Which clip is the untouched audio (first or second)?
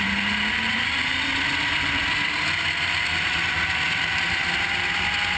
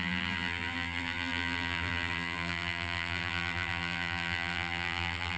first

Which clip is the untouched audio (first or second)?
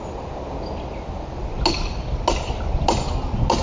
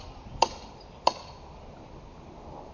first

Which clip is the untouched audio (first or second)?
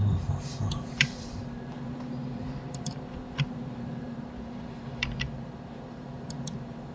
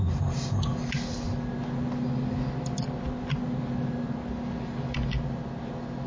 second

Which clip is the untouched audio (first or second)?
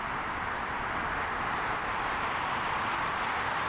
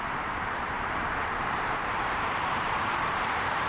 first